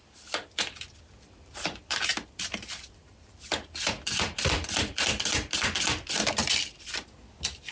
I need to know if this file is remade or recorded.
remade